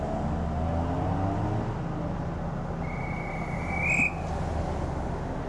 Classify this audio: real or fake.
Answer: real